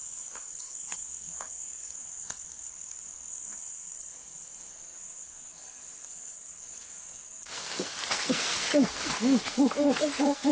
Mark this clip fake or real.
fake